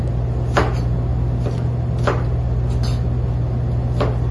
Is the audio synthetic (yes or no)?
no